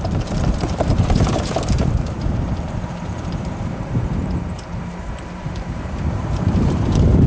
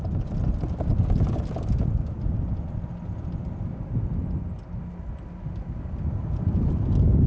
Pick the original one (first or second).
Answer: second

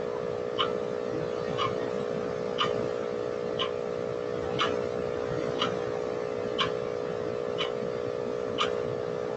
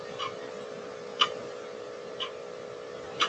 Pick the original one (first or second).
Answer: first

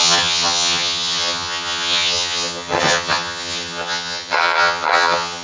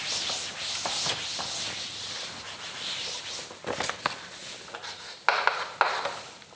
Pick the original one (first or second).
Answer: second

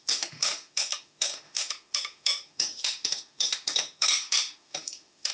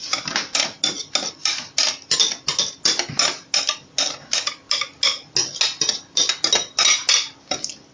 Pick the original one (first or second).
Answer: second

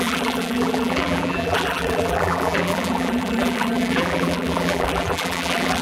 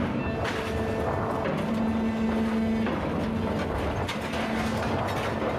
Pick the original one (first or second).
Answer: second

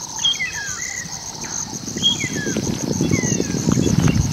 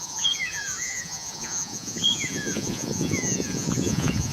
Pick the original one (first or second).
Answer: first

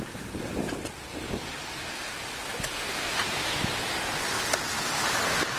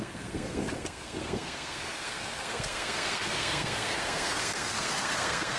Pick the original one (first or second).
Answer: first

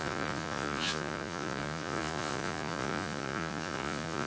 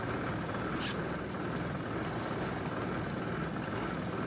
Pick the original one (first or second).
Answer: second